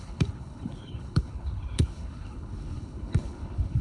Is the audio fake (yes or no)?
yes